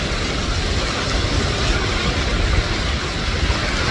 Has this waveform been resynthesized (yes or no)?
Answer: no